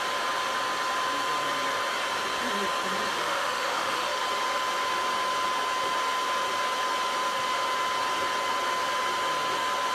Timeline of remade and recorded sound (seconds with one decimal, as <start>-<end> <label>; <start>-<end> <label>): 0.0-3.1 recorded; 3.1-4.2 remade; 4.2-9.9 recorded

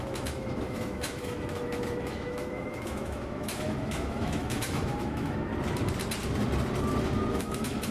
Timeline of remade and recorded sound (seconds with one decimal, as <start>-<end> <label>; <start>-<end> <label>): 0.0-5.5 remade; 5.5-7.3 recorded; 7.3-7.9 remade